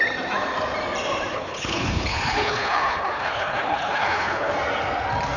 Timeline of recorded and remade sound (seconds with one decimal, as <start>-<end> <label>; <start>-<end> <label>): 0.0-1.3 recorded; 1.3-4.5 remade; 4.5-5.4 recorded